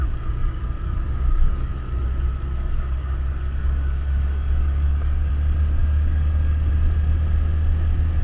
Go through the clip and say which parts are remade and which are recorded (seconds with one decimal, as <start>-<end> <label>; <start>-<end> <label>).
0.0-0.4 recorded; 0.4-5.3 remade; 5.3-5.8 recorded; 5.8-6.7 remade; 6.7-8.2 recorded